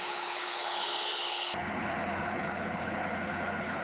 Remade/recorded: remade